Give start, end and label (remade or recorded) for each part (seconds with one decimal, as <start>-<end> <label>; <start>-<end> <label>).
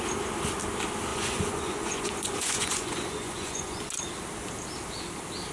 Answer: 0.0-1.1 recorded; 1.1-3.8 remade; 3.8-5.5 recorded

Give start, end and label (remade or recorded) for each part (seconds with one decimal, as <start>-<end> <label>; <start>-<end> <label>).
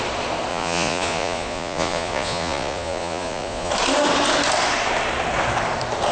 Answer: 0.0-0.5 recorded; 0.5-3.7 remade; 3.7-6.1 recorded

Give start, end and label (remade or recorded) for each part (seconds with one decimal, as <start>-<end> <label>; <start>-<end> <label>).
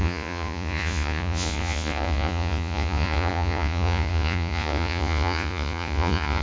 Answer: 0.0-6.4 remade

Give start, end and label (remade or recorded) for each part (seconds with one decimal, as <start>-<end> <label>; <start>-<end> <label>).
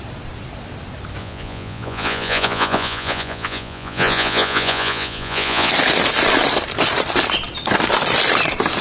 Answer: 0.0-1.2 recorded; 1.2-5.7 remade; 5.7-8.8 recorded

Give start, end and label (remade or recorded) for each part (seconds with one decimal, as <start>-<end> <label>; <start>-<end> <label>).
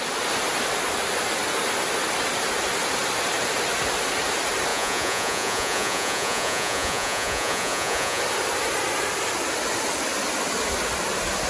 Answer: 0.0-4.7 recorded; 4.7-8.2 remade; 8.2-11.5 recorded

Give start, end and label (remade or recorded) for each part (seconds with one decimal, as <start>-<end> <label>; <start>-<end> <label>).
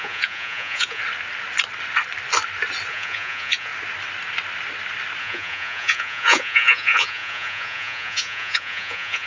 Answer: 0.0-1.0 remade; 1.0-2.9 recorded; 2.9-3.7 remade; 3.7-5.2 recorded; 5.2-9.3 remade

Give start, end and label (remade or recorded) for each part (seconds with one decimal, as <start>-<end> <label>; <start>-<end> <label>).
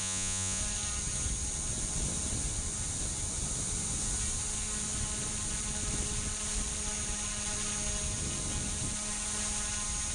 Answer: 0.0-0.6 remade; 0.6-10.1 recorded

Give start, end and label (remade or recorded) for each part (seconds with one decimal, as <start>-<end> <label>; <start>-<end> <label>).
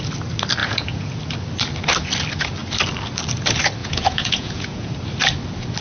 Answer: 0.0-0.6 recorded; 0.6-1.2 remade; 1.2-3.8 recorded; 3.8-4.9 remade; 4.9-5.8 recorded